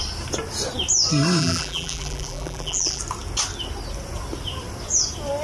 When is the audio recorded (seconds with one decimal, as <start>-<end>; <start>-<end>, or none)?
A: 0.0-1.4; 3.0-5.4